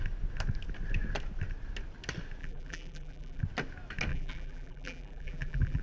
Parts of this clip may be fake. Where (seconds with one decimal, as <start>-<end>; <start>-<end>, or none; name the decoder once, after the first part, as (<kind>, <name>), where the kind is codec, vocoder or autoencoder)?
2.4-3.4 (vocoder, BigVGAN v2); 4.1-5.8